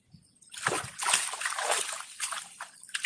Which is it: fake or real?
real